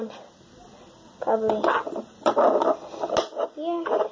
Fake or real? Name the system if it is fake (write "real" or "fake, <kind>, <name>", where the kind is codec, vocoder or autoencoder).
real